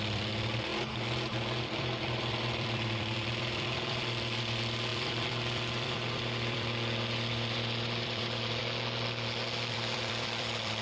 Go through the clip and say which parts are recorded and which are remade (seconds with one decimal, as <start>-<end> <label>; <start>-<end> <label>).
0.0-0.7 remade; 0.7-1.6 recorded; 1.6-8.6 remade; 8.6-9.7 recorded; 9.7-10.8 remade